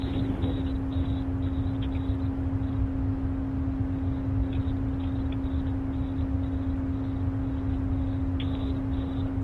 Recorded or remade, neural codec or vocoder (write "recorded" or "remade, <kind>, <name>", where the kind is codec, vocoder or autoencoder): recorded